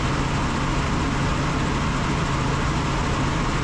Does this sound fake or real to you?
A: real